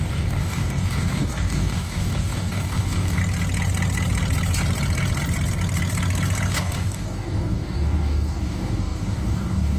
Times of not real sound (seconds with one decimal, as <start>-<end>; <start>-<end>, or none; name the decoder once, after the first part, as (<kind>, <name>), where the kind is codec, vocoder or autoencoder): 0.0-3.2 (codec, DAC); 6.5-9.8